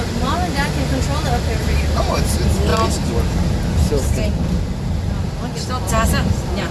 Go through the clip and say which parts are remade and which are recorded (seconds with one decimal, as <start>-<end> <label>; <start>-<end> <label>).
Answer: 0.0-1.6 recorded; 1.6-2.3 remade; 2.3-6.7 recorded